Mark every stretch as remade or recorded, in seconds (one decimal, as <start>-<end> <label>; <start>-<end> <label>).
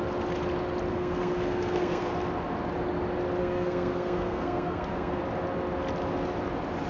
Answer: 0.0-0.9 recorded; 0.9-2.1 remade; 2.1-3.4 recorded; 3.4-5.2 remade; 5.2-6.9 recorded